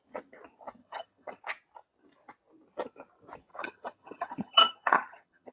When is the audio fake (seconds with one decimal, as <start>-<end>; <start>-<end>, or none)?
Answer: 0.8-1.4; 3.5-5.5